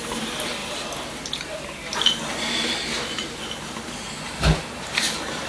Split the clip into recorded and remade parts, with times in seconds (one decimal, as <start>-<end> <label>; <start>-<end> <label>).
0.0-5.5 recorded